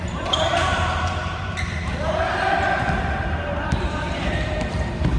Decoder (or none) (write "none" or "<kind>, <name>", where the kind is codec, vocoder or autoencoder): vocoder, BigVGAN v2